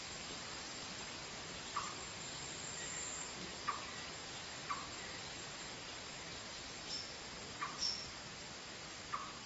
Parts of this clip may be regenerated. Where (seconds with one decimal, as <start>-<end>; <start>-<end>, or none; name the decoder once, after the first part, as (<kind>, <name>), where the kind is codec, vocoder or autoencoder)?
6.3-7.3 (vocoder, BigVGAN v2)